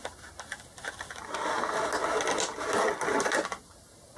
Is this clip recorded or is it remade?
recorded